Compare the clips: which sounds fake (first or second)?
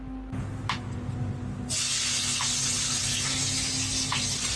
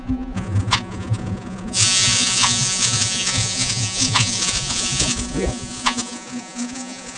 second